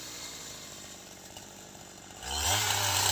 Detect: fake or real fake